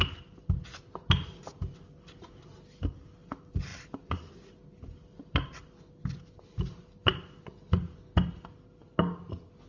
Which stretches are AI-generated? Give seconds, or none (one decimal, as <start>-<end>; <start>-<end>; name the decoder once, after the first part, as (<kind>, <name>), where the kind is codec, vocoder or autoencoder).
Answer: none